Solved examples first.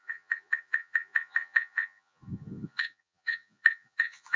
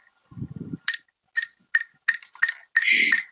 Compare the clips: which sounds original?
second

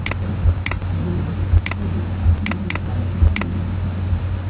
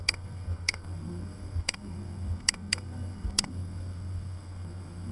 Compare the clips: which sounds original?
first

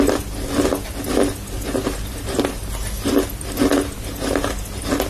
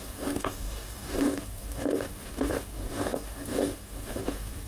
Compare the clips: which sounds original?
first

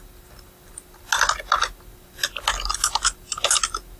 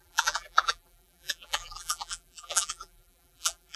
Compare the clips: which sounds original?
first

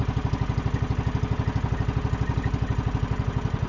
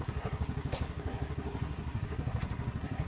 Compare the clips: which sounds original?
first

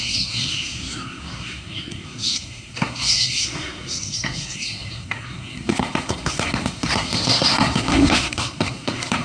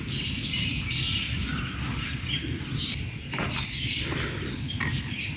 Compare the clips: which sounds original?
second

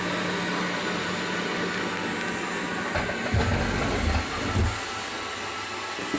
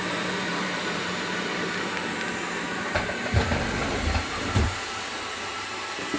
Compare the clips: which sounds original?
first